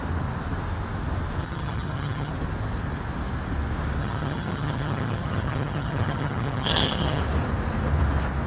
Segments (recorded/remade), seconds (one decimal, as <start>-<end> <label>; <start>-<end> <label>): 0.0-1.4 recorded; 1.4-2.3 remade; 2.3-4.0 recorded; 4.0-7.2 remade; 7.2-8.5 recorded